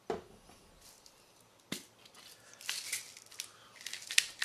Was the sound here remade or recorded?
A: recorded